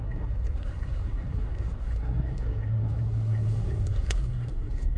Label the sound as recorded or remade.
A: remade